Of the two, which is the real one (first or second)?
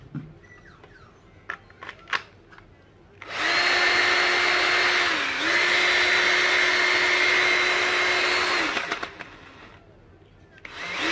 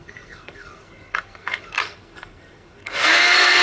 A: first